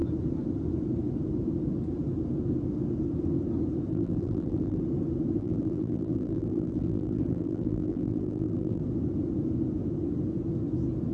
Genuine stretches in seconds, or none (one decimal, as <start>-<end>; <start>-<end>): 0.0-3.9; 4.8-5.4; 8.8-11.1